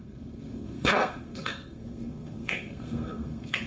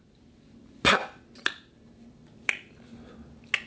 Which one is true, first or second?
second